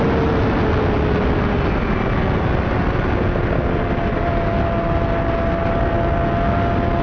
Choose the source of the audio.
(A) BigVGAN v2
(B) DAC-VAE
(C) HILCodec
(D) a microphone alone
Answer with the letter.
D